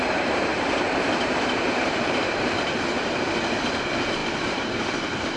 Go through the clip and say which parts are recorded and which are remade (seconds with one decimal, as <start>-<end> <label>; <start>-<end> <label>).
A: 0.0-5.4 remade